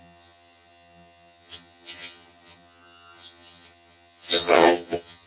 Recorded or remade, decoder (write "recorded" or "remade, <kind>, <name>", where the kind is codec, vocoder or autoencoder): remade, vocoder, HiFi-GAN